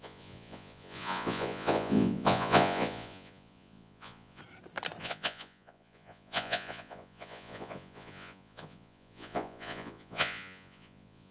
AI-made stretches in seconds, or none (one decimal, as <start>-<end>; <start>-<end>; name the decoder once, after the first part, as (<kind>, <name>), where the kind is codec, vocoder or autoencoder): 0.0-4.4 (vocoder, Vocos); 5.0-11.3